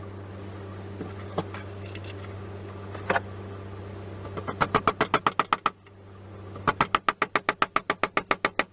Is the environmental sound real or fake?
real